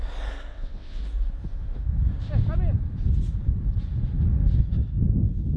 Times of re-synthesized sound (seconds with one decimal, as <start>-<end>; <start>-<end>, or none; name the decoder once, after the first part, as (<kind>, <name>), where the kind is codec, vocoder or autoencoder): 0.5-1.0 (vocoder, WaveNeXt)